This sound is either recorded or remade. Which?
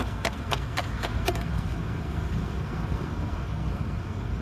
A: remade